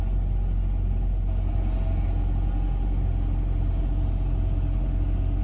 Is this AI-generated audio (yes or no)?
no